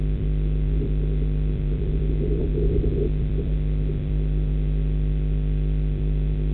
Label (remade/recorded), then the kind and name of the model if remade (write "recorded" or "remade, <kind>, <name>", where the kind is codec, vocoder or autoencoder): remade, vocoder, BigVGAN v2